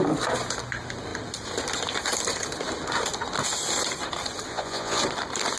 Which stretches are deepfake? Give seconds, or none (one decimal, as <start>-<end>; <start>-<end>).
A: 4.5-5.0